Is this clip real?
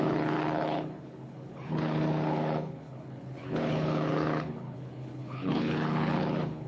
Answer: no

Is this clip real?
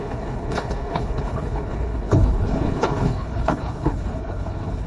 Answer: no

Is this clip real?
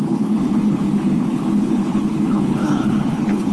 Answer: no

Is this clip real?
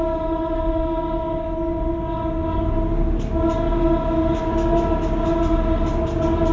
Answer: yes